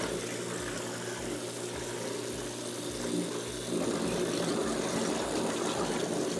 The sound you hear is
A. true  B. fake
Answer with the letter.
A